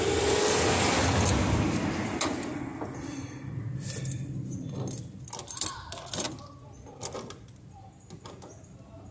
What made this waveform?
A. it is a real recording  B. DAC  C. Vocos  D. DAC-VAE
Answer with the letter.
A